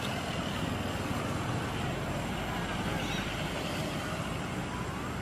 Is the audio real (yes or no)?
yes